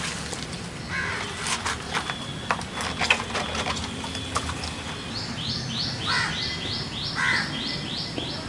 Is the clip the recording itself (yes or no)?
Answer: yes